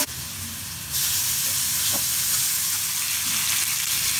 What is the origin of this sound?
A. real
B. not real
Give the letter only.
A